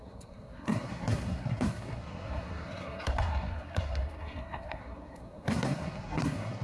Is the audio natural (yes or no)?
no